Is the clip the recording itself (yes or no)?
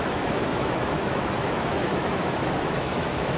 no